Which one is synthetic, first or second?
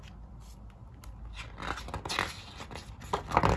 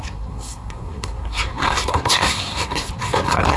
second